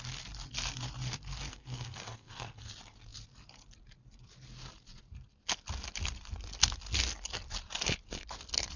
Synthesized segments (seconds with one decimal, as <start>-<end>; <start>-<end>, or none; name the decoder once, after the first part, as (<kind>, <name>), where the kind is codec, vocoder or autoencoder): 1.5-2.7 (codec, SNAC)